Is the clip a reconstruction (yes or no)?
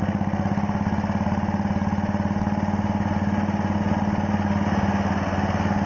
no